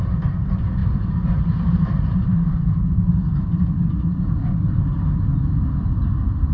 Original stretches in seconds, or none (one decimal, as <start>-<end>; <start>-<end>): 0.0-0.8; 2.1-6.5